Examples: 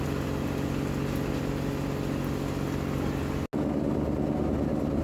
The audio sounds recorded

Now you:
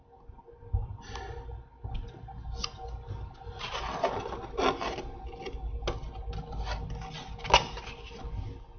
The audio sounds recorded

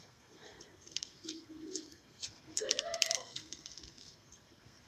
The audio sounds remade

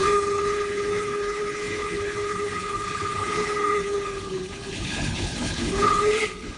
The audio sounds remade